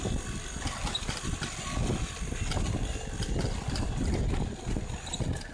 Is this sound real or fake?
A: real